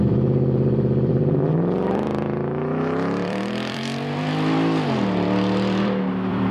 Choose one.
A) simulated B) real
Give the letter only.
A